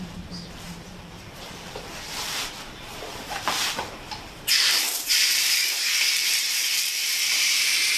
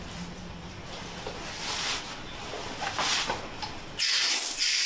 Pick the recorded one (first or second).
second